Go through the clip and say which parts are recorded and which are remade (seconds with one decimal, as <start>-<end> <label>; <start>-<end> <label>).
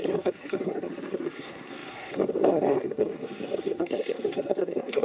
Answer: 0.0-5.0 remade